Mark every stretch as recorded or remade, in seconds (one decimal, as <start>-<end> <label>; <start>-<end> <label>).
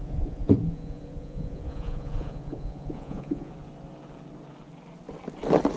0.0-3.5 remade; 3.5-5.8 recorded